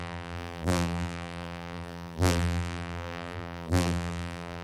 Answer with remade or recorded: remade